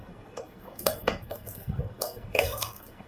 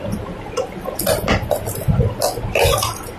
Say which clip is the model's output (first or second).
first